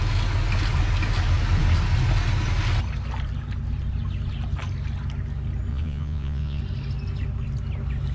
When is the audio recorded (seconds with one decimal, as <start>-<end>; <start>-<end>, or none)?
0.0-5.7; 6.6-8.1